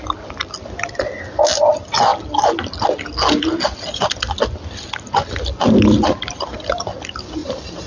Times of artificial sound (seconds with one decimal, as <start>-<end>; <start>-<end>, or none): none